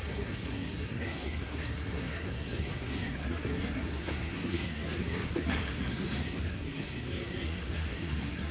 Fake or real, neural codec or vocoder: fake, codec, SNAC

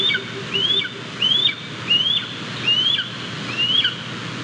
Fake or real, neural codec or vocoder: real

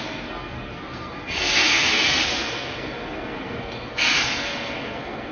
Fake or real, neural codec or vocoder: fake, codec, SNAC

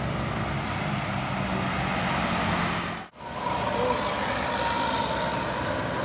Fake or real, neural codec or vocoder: real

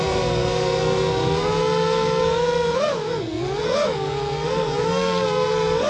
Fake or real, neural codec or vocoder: fake, codec, SNAC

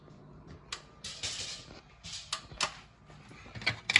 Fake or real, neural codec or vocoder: real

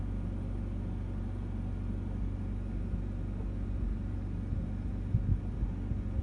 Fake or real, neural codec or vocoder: real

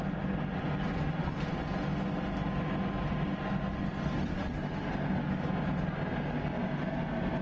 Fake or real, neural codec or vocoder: real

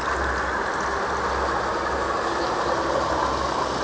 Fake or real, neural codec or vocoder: real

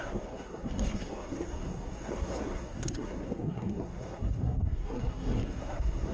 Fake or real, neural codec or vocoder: fake, codec, SNAC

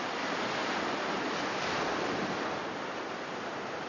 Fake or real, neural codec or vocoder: real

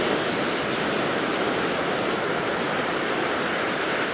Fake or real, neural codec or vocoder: real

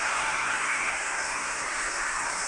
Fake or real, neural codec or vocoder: fake, codec, SNAC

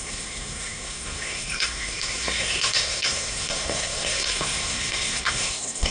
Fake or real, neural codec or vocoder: fake, codec, SNAC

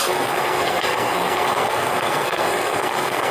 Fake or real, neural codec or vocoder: fake, codec, SNAC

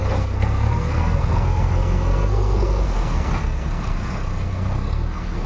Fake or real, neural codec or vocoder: fake, codec, SNAC